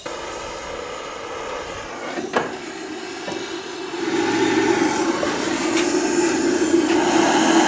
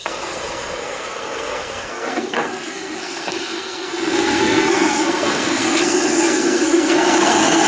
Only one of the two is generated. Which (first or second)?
second